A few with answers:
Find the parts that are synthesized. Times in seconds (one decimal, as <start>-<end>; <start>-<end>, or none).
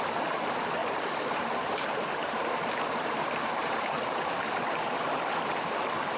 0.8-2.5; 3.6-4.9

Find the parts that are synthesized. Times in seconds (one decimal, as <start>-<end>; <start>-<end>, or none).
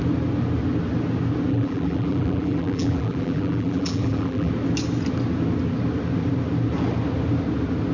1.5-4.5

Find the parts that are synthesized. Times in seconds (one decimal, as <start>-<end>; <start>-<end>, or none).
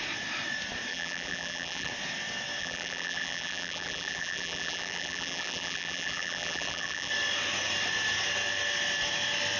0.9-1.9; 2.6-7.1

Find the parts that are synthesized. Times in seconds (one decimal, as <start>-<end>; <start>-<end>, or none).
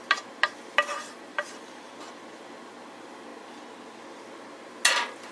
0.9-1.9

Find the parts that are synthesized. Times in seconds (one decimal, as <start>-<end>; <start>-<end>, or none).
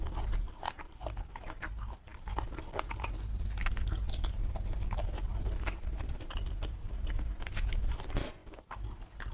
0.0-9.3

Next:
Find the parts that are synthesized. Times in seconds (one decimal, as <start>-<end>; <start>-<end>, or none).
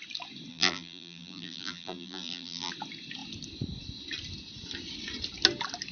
0.5-2.7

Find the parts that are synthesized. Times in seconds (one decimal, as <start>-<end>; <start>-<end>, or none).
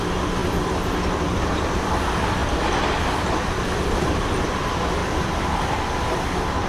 5.0-5.9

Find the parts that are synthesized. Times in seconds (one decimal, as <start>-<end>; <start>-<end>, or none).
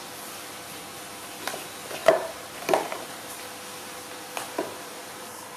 2.0-3.3; 4.7-5.6